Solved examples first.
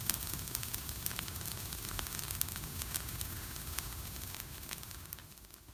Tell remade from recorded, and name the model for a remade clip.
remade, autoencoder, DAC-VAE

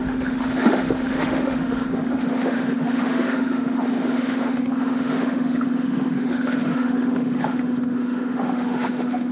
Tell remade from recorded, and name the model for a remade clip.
remade, autoencoder, DAC-VAE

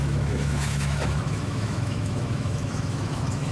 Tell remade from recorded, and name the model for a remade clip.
remade, autoencoder, DAC-VAE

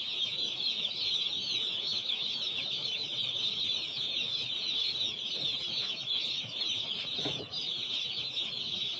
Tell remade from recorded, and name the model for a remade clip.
remade, autoencoder, DAC-VAE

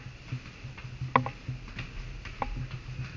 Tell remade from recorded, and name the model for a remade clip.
recorded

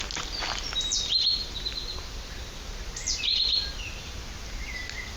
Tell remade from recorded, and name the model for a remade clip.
recorded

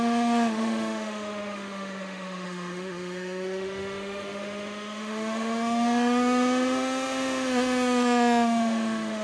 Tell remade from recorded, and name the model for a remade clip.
remade, autoencoder, DAC-VAE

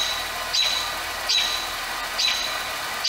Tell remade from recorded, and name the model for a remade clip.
recorded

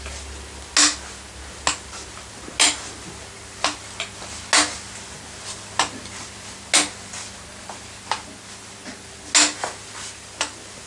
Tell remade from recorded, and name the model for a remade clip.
recorded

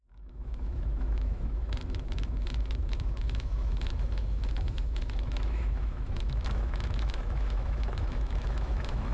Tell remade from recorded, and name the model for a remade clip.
remade, autoencoder, DAC-VAE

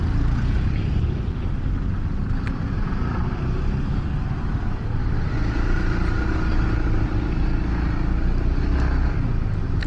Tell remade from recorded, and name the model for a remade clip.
recorded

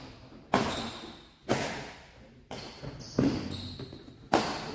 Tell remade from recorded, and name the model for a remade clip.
recorded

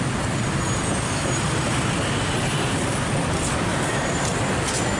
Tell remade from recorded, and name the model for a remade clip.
recorded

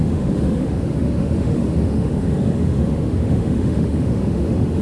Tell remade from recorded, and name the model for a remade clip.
remade, autoencoder, DAC-VAE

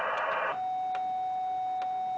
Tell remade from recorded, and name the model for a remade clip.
recorded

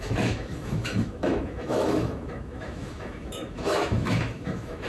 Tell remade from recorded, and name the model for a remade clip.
remade, autoencoder, DAC-VAE